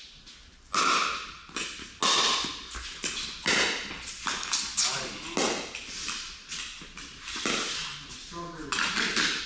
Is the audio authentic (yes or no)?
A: yes